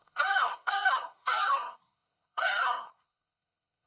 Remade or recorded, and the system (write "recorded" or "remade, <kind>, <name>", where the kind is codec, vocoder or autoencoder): remade, codec, SNAC